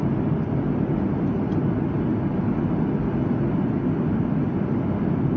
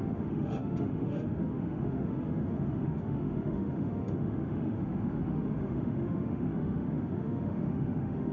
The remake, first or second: second